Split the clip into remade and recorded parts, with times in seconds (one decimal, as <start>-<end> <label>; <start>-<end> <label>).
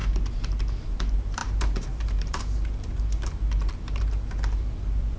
0.0-0.8 recorded; 0.8-5.2 remade